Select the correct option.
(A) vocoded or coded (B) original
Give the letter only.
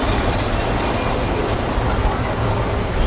B